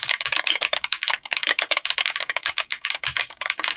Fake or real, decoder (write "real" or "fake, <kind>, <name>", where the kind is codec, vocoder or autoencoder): fake, codec, DAC